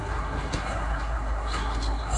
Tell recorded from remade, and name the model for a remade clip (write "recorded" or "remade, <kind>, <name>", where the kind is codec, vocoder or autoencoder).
remade, codec, SNAC